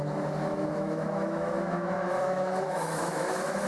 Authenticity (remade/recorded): remade